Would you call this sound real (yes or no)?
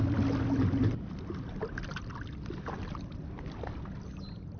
yes